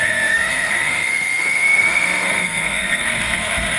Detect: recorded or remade remade